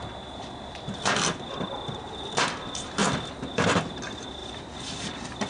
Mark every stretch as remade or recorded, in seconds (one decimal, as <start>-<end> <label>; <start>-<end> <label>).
0.0-4.4 recorded; 4.4-5.5 remade